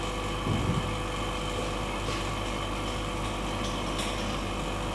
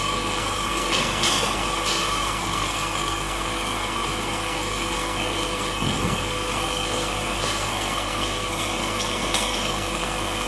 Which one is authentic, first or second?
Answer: first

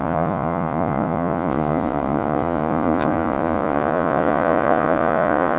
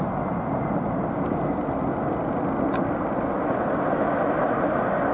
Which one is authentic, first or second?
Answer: second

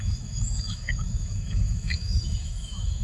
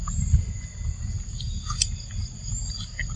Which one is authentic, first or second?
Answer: second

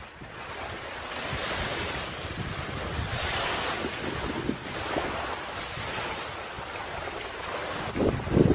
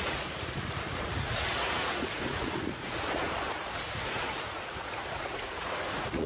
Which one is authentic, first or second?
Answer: first